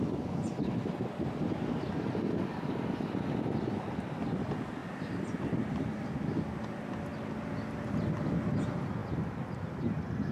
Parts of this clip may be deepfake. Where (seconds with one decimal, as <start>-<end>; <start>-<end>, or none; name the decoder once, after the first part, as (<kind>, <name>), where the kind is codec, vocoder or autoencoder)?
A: none